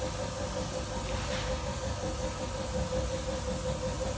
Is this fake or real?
real